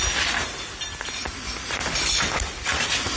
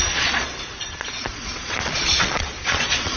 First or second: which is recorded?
first